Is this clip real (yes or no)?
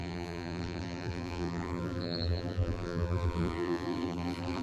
no